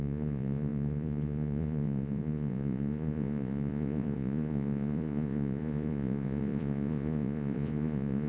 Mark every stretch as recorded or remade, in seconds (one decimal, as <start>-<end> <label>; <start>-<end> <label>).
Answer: 0.0-8.3 remade